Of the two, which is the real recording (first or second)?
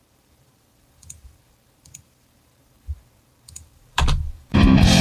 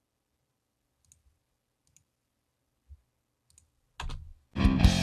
second